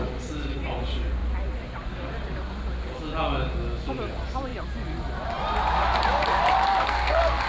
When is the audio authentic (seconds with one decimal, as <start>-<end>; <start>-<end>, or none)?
0.0-6.6